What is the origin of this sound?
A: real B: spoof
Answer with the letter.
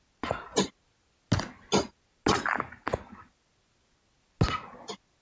A